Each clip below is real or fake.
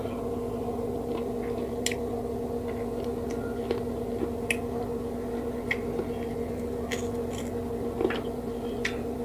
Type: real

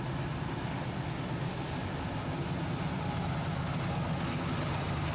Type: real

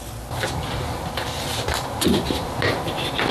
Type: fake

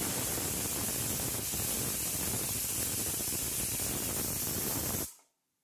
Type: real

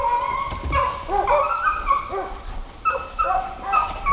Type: real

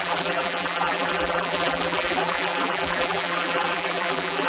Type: fake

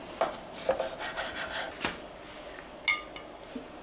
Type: real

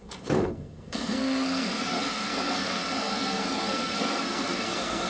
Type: fake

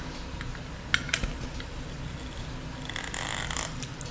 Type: real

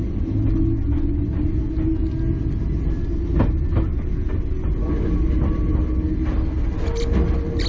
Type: real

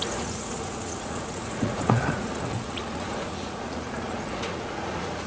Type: fake